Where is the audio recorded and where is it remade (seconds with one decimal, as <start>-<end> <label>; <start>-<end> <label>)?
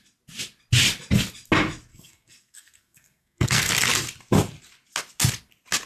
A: 0.0-1.9 recorded; 1.9-3.7 remade; 3.7-5.9 recorded